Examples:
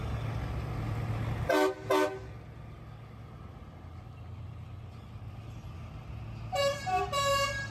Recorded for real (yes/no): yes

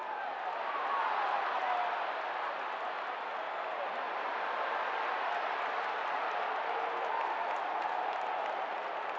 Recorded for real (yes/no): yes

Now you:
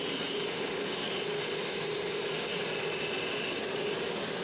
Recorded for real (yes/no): yes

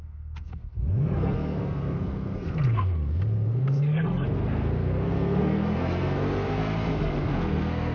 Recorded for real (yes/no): no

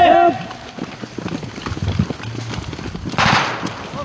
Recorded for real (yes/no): yes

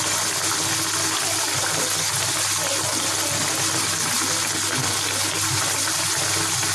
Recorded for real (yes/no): yes